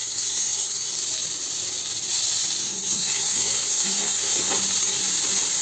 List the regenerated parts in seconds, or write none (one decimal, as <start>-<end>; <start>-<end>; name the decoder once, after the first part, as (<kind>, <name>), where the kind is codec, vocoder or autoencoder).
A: 0.0-0.9 (codec, SNAC); 2.6-4.5